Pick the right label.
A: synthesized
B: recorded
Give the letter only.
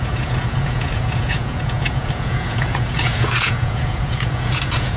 A